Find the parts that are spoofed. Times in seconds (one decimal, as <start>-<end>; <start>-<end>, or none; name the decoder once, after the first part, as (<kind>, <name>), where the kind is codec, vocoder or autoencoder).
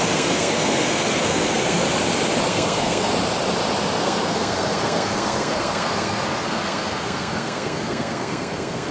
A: 0.0-1.8 (codec, SNAC); 2.5-3.1; 4.0-8.9